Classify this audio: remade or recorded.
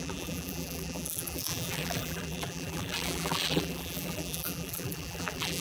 remade